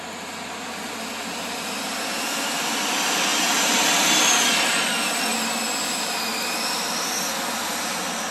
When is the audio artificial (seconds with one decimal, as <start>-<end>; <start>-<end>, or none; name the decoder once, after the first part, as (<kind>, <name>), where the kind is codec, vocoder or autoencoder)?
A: none